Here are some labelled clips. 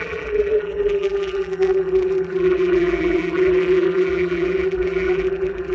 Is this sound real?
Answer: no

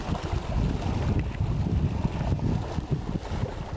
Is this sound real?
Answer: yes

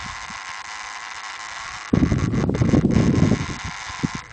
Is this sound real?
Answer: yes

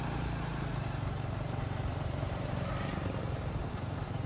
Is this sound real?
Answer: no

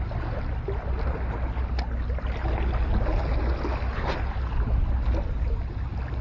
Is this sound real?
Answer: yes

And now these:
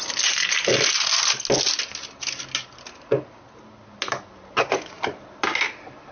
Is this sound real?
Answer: yes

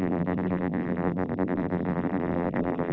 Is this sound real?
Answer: no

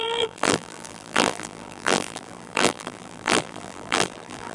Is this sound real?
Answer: no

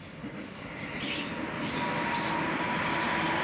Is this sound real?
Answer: yes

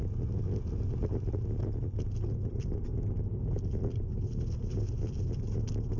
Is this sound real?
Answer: yes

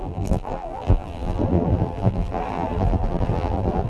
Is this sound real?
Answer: no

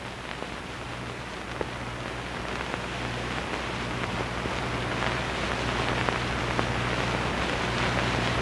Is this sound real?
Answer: yes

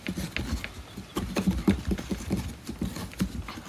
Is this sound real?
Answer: yes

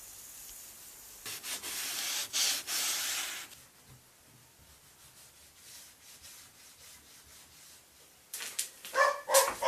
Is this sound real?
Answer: yes